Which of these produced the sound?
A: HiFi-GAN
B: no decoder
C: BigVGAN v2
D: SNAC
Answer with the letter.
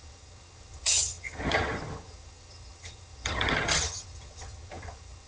A